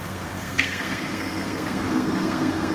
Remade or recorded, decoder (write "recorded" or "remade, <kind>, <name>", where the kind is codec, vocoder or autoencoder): remade, codec, SNAC